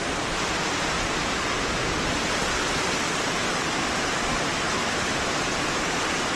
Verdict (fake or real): real